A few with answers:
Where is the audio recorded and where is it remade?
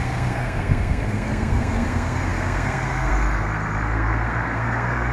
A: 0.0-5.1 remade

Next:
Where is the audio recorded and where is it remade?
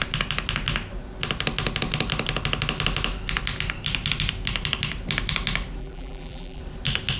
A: 0.0-5.8 recorded; 5.8-6.6 remade; 6.6-7.2 recorded